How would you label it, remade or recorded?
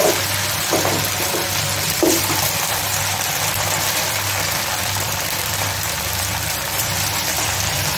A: remade